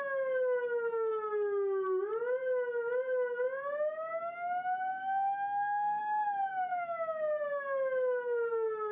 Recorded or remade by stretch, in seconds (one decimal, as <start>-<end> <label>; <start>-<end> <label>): 0.0-4.9 recorded; 4.9-6.0 remade; 6.0-6.7 recorded; 6.7-7.2 remade; 7.2-8.9 recorded